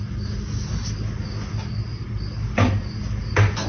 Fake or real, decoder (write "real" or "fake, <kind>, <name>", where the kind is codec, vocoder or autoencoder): real